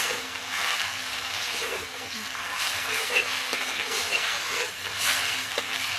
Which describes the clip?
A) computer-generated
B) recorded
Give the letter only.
A